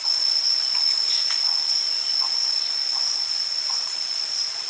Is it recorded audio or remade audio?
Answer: remade